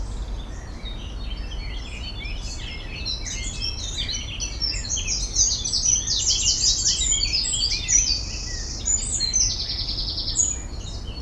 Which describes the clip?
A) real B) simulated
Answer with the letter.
A